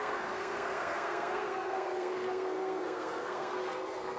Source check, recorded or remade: remade